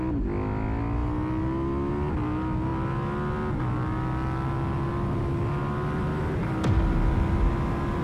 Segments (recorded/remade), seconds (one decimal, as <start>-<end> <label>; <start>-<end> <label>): 0.0-8.0 recorded